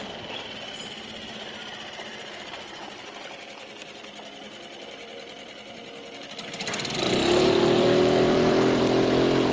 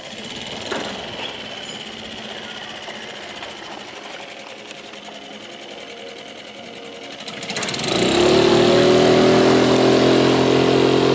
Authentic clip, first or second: second